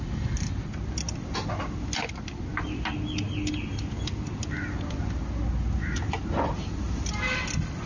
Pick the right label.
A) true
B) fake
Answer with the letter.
A